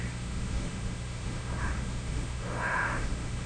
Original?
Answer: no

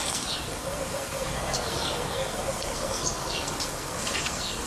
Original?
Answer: no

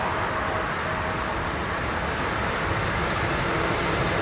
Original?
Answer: yes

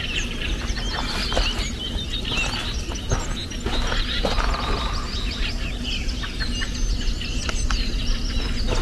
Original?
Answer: yes